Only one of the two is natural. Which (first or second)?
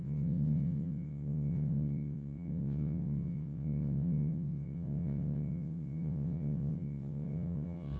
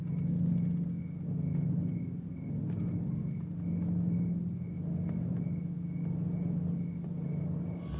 second